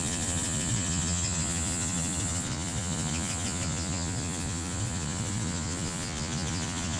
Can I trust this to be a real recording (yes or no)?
no